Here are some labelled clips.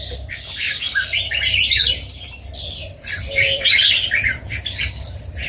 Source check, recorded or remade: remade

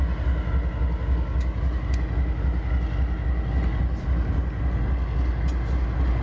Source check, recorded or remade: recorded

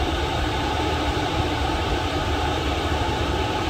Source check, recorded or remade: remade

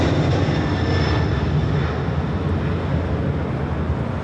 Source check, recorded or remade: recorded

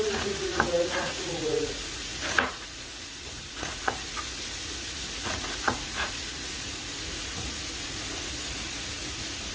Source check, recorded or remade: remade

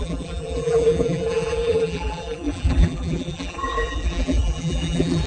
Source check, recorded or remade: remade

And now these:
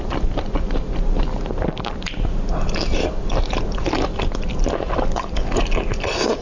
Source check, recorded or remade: recorded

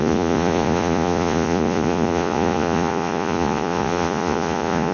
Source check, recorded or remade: remade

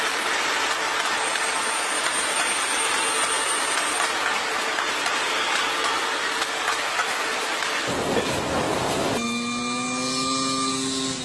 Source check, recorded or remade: recorded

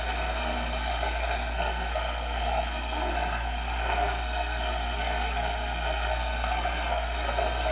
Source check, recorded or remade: remade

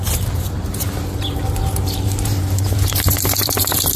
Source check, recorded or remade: remade